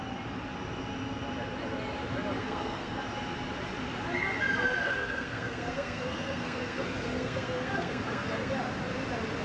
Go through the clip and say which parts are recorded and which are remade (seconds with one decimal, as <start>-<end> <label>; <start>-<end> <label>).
0.0-2.4 recorded; 2.4-3.0 remade; 3.0-4.8 recorded; 4.8-8.5 remade; 8.5-9.4 recorded

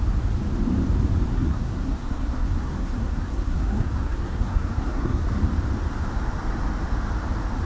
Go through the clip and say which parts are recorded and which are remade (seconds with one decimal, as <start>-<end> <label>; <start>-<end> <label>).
0.0-1.3 recorded; 1.3-5.4 remade; 5.4-7.6 recorded